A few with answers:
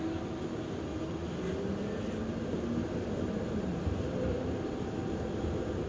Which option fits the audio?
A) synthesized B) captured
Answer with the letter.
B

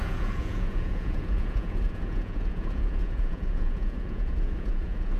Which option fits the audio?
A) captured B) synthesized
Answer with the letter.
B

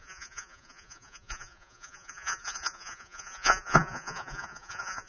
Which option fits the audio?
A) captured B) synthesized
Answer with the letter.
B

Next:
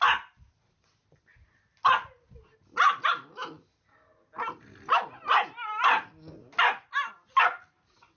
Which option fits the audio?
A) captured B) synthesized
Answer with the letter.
A